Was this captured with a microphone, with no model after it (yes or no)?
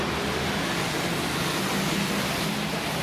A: yes